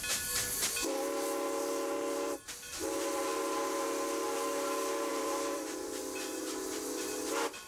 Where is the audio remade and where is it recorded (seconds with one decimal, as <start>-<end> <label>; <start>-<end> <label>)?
0.0-5.1 recorded; 5.1-6.0 remade; 6.0-7.7 recorded